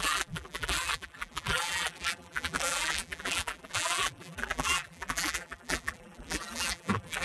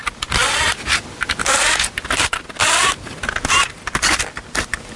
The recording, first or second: second